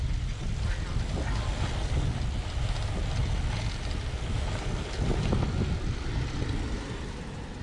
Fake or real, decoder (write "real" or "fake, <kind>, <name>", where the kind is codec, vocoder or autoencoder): real